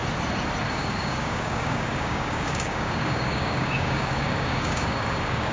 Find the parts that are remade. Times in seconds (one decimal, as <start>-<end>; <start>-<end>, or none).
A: 0.7-5.5